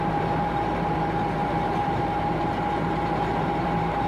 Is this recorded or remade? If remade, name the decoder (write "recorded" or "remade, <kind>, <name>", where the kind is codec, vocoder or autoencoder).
remade, vocoder, BigVGAN v2